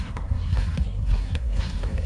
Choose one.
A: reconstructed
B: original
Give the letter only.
A